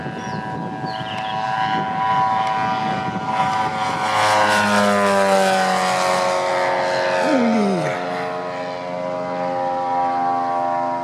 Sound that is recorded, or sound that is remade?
recorded